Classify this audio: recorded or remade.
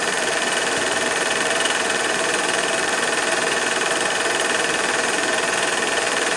remade